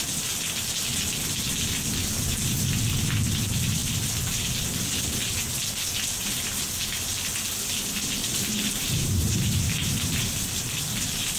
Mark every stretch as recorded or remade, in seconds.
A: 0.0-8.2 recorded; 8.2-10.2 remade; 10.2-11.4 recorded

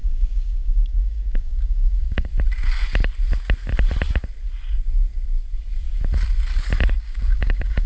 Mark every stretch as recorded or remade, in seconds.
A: 0.0-2.3 remade; 2.3-7.0 recorded; 7.0-7.9 remade

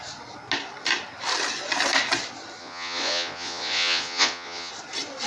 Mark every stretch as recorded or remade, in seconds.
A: 0.0-2.6 recorded; 2.6-4.7 remade; 4.7-5.3 recorded

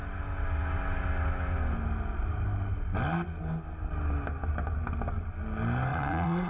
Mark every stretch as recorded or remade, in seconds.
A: 0.0-5.9 recorded; 5.9-6.5 remade

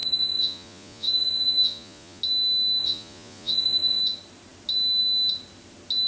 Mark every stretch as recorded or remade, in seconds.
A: 0.0-2.2 remade; 2.2-2.8 recorded; 2.8-4.0 remade; 4.0-6.1 recorded